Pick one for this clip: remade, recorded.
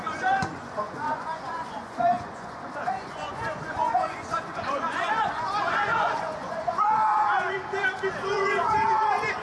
remade